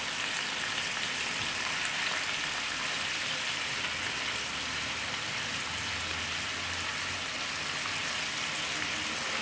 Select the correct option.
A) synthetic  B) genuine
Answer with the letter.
B